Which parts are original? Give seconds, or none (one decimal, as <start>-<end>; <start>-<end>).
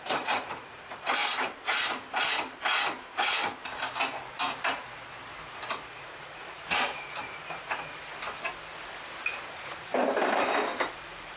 1.1-6.0; 7.9-9.5; 10.0-11.0